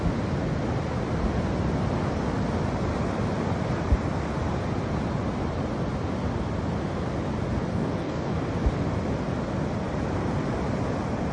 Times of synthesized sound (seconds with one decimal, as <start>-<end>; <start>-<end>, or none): 7.7-8.4